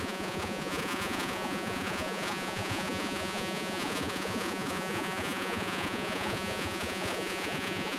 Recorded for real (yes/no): no